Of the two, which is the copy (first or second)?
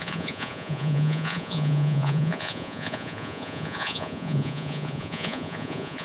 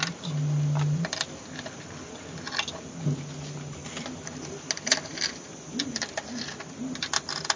first